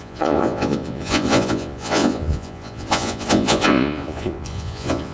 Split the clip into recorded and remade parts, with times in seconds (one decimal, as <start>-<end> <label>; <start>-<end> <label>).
0.0-5.1 remade